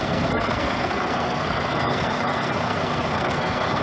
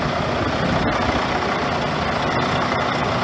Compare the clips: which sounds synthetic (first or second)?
first